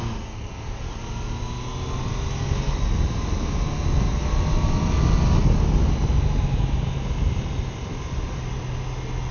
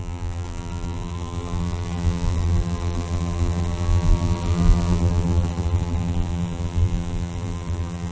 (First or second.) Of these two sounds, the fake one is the second